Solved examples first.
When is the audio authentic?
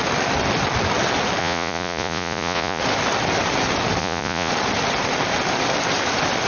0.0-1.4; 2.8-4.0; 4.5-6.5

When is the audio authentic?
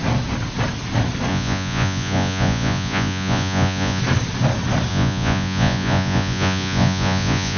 0.0-1.3; 4.0-4.9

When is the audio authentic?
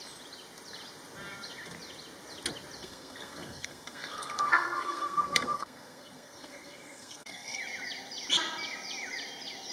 0.0-2.8; 7.6-9.7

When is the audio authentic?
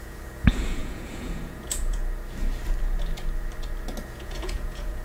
2.0-4.1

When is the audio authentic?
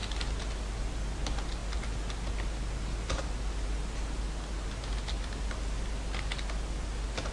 0.0-7.3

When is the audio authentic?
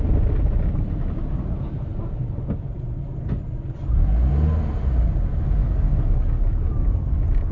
0.0-5.6; 7.0-7.5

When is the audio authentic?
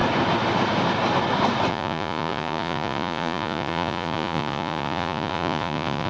0.0-1.7